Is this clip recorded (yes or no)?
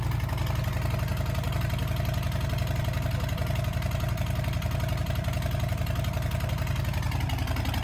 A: yes